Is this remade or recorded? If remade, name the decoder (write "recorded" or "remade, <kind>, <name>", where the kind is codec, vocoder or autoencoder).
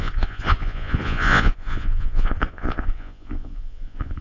remade, vocoder, Vocos